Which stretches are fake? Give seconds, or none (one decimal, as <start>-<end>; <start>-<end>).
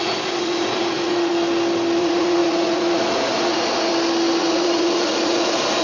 0.0-1.3; 2.0-3.9; 4.4-5.8